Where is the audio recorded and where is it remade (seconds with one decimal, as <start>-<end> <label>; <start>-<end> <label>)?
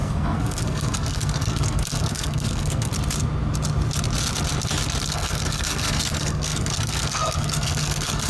0.0-2.9 remade; 2.9-5.1 recorded; 5.1-8.3 remade